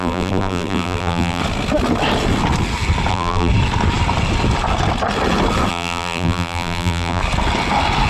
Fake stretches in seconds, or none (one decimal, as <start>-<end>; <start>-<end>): 0.0-1.4; 3.1-3.5; 5.7-7.2